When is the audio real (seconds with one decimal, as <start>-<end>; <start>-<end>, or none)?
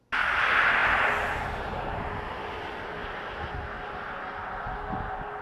0.0-5.4